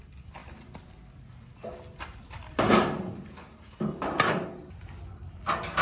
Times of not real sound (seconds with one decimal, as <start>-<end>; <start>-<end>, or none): none